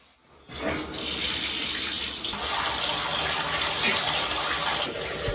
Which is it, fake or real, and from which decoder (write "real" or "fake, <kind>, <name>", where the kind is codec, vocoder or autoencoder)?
real